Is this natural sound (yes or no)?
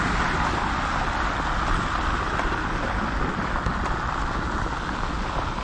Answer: yes